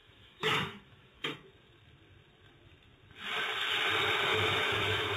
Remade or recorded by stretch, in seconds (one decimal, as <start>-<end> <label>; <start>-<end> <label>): 0.0-1.3 remade; 1.3-4.3 recorded; 4.3-5.2 remade